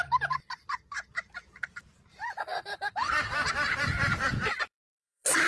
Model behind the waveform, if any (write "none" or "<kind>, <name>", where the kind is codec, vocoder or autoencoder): vocoder, BigVGAN v2